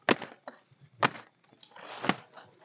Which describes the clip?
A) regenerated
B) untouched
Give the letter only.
B